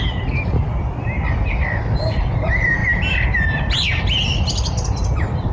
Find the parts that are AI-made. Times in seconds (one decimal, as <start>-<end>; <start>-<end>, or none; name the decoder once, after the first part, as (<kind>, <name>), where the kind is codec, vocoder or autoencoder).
none